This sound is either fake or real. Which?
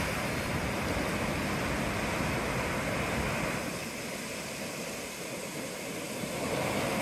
real